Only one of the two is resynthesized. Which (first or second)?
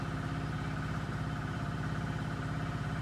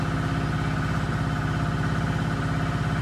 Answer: first